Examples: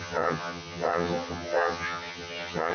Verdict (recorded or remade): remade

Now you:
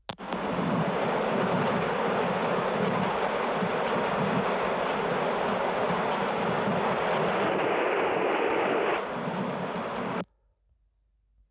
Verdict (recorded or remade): recorded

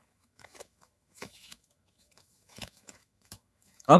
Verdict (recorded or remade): remade